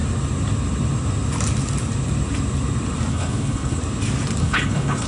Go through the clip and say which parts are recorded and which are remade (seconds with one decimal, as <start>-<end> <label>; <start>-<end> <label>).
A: 0.0-3.1 recorded; 3.1-3.8 remade; 3.8-4.4 recorded; 4.4-5.1 remade